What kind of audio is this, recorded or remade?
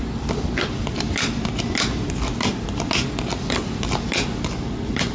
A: recorded